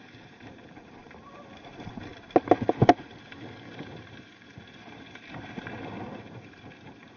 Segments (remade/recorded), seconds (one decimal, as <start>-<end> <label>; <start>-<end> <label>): 0.0-2.1 remade; 2.1-3.7 recorded; 3.7-7.2 remade